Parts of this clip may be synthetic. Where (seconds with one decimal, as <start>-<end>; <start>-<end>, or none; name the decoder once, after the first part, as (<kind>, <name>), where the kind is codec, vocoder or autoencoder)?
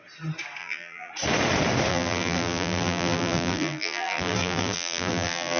0.6-1.1 (vocoder, BigVGAN v2); 1.9-5.6